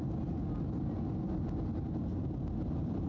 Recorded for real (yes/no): yes